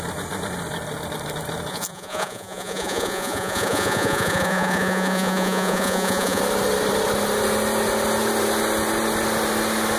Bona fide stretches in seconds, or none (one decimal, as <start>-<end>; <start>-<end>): 0.0-1.7; 6.4-10.0

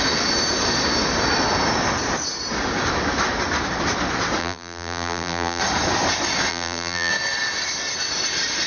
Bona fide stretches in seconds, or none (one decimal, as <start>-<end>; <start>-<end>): 0.0-4.4; 5.6-6.5; 7.1-8.7

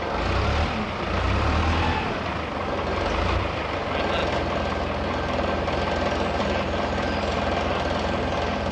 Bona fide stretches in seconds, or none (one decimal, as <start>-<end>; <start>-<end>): 0.0-8.7

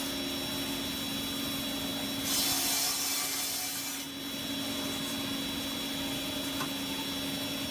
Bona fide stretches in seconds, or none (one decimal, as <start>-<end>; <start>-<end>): 0.0-7.7

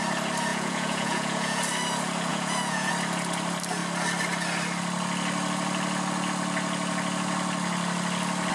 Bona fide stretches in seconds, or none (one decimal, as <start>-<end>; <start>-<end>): 0.0-0.5; 1.6-2.3; 2.9-8.5